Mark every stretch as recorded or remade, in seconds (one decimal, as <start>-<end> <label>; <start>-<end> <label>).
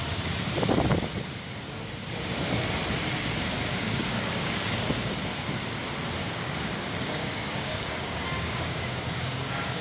0.0-3.8 recorded; 3.8-4.7 remade; 4.7-6.2 recorded; 6.2-9.8 remade